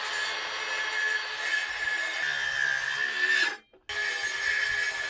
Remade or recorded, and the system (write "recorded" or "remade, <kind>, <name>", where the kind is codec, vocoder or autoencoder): recorded